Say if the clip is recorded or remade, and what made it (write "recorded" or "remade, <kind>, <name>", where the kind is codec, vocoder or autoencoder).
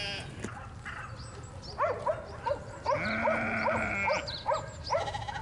recorded